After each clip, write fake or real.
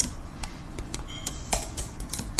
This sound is fake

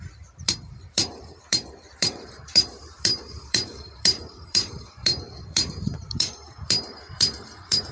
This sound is fake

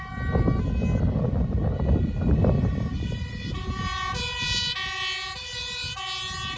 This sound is real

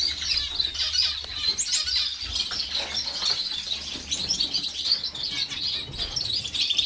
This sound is real